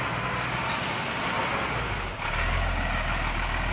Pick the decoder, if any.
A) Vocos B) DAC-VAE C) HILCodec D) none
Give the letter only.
D